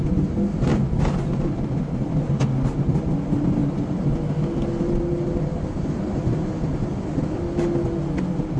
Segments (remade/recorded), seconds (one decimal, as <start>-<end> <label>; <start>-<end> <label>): 0.0-8.6 recorded

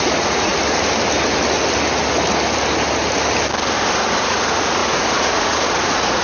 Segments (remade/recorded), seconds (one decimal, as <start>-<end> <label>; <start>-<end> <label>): 0.0-0.5 remade; 0.5-4.2 recorded; 4.2-6.2 remade

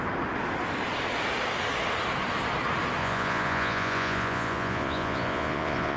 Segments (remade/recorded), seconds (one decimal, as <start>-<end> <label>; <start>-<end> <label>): 0.0-3.0 recorded; 3.0-6.0 remade

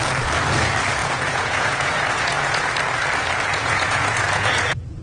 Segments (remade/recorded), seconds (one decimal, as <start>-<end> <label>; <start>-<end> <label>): 0.0-1.0 recorded; 1.0-2.7 remade; 2.7-3.5 recorded; 3.5-5.0 remade

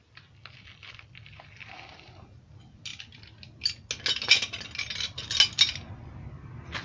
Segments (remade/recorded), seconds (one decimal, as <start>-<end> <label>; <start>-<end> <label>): 0.0-6.8 recorded